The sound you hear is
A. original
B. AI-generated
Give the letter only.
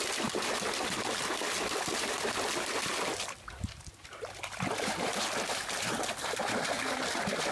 A